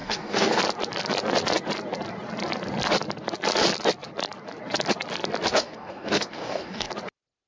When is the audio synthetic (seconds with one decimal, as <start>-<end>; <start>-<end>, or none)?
0.0-0.6; 5.5-6.9